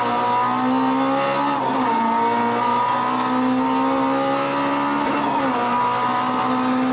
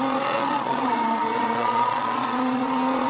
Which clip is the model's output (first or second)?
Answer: second